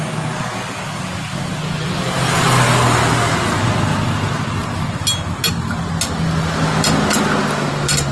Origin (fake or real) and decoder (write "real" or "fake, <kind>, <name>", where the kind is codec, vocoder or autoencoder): real